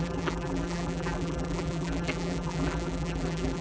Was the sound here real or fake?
fake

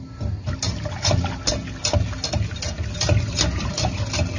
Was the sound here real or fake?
real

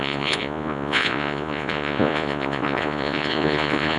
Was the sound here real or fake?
fake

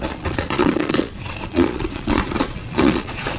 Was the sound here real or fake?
fake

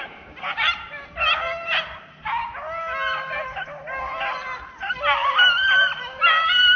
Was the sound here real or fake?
real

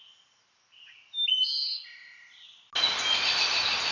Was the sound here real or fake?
real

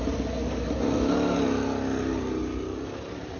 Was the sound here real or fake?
real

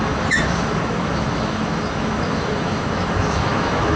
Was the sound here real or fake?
fake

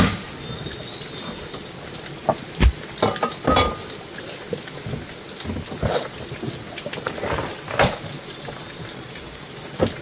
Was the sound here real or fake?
real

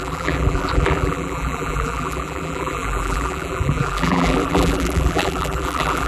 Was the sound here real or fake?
fake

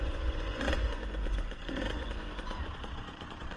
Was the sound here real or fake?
fake